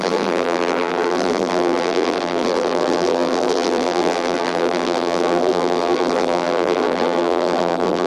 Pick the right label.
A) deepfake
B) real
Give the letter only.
A